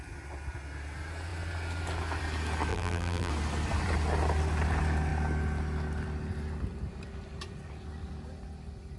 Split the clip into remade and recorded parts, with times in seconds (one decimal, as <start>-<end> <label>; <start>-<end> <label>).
0.0-2.7 recorded; 2.7-3.3 remade; 3.3-9.0 recorded